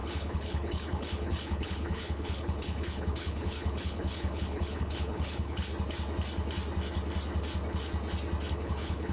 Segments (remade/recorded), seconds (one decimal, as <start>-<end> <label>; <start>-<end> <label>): 0.0-5.7 remade; 5.7-8.5 recorded; 8.5-9.1 remade